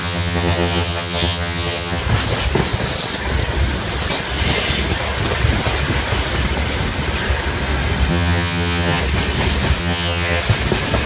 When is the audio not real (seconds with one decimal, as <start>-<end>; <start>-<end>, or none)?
0.0-2.0; 8.1-9.0; 9.8-10.4